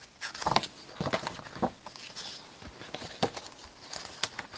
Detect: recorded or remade recorded